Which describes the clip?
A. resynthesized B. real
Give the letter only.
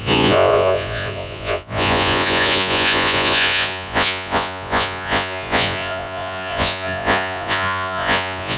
A